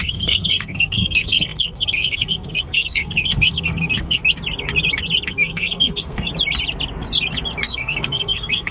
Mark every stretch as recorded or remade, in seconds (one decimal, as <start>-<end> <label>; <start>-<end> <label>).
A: 0.0-4.2 remade; 4.2-5.3 recorded; 5.3-6.3 remade; 6.3-7.7 recorded; 7.7-8.7 remade